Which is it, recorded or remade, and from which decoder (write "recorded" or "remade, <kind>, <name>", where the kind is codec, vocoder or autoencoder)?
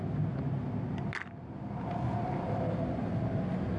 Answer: recorded